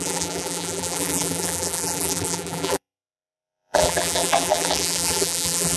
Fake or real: fake